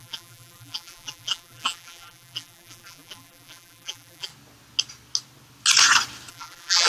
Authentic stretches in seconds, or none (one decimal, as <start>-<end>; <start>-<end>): 4.3-6.3